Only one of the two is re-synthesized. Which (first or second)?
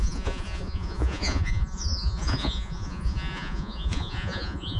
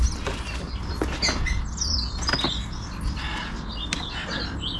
first